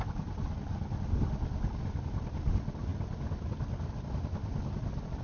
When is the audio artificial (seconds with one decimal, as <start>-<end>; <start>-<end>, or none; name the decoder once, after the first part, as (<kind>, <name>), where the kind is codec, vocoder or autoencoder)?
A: none